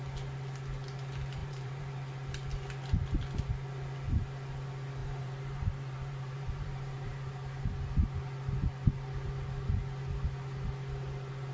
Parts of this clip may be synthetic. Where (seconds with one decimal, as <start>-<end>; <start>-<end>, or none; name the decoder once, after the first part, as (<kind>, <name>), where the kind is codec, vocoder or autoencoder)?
1.4-1.9 (vocoder, BigVGAN v2); 5.0-7.6